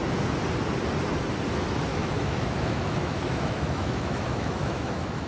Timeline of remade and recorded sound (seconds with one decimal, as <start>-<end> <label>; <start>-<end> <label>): 0.0-1.9 recorded; 1.9-5.3 remade